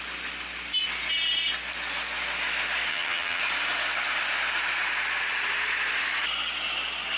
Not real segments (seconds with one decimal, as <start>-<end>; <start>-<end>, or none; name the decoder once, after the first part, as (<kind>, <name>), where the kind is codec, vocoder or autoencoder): 2.9-3.4 (vocoder, HiFi-GAN)